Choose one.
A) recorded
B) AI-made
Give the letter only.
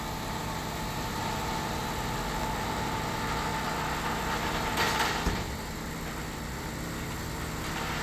A